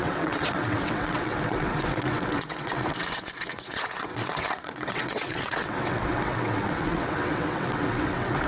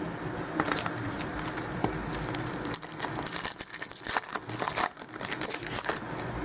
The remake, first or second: first